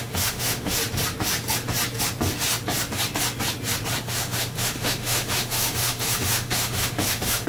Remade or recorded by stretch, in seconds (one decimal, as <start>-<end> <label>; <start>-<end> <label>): 0.0-0.8 remade; 0.8-4.0 recorded; 4.0-7.5 remade